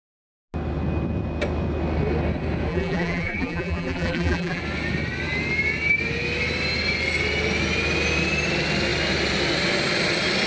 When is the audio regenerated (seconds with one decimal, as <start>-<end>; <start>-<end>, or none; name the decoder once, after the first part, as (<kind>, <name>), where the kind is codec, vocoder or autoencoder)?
2.7-4.6 (vocoder, BigVGAN v2)